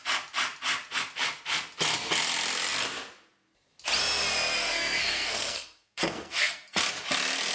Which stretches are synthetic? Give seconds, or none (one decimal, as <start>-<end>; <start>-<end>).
4.6-6.9